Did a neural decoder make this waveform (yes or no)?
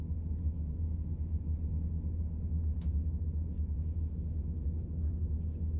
no